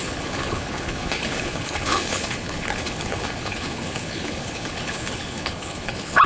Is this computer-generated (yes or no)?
yes